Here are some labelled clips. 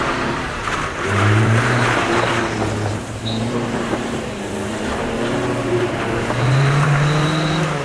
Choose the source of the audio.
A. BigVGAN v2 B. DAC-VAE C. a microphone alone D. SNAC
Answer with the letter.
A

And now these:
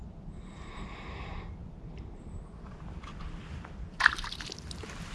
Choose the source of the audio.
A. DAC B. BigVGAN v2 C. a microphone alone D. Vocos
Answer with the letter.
B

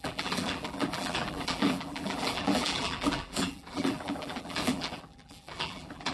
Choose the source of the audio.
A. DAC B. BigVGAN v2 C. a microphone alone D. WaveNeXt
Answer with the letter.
B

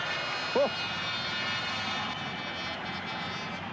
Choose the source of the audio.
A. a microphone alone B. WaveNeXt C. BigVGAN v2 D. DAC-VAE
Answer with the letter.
A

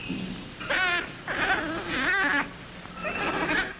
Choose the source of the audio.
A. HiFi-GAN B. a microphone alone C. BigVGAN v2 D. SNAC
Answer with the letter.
B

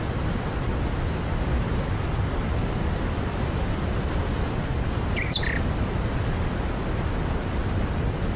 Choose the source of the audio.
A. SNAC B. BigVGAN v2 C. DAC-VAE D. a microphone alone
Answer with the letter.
D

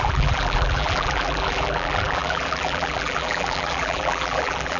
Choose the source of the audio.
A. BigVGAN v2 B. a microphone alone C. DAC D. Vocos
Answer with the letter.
A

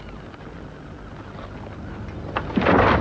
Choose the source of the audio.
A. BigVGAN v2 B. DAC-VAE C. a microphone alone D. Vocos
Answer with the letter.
C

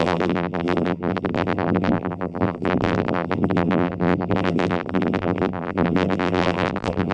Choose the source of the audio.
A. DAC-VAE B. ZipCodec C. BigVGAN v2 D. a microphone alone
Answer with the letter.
C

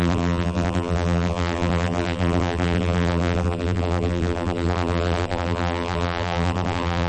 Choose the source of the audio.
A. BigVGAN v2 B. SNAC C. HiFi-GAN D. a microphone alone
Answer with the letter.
A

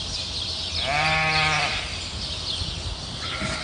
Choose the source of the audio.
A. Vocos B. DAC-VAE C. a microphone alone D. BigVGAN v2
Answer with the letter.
C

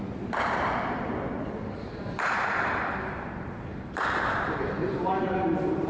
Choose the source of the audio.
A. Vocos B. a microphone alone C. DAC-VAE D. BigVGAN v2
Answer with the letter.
D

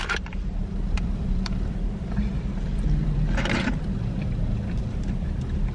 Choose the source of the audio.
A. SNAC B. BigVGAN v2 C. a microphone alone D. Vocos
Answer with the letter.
B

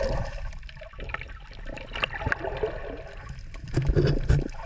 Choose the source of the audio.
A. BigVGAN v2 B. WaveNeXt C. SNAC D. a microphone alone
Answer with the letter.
A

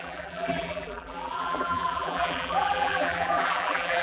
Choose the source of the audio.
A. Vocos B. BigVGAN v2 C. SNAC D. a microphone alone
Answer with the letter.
B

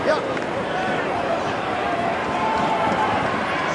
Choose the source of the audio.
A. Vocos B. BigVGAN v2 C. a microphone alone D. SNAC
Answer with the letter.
B